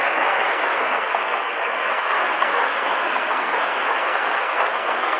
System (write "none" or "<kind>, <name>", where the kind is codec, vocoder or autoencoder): codec, SNAC